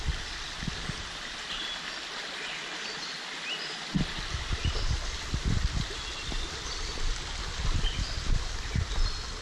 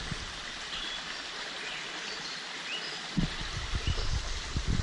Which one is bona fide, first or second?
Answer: first